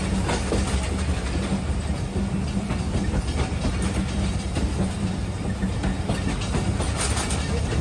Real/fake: real